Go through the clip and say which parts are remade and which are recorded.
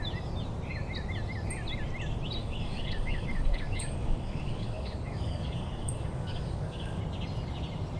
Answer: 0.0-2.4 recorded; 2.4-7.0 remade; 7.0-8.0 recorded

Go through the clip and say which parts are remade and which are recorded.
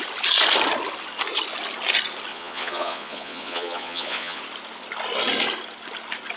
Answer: 0.0-2.3 recorded; 2.3-4.4 remade; 4.4-6.4 recorded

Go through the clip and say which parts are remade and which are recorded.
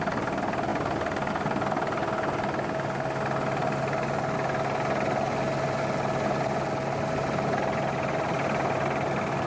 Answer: 0.0-9.5 recorded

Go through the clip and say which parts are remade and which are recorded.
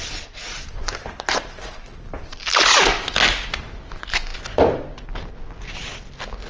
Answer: 0.0-6.5 recorded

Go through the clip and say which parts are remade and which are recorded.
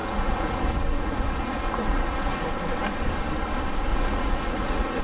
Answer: 0.0-2.5 remade; 2.5-3.9 recorded; 3.9-5.0 remade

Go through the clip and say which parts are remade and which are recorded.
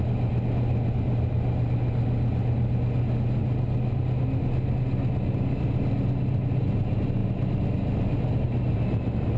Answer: 0.0-9.4 recorded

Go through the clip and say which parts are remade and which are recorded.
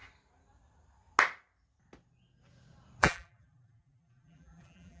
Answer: 0.0-3.0 recorded; 3.0-5.0 remade